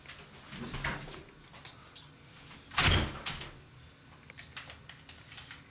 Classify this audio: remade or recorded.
recorded